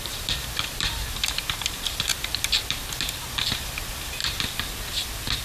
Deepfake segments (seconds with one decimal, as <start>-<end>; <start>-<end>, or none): 0.0-2.1; 3.4-4.2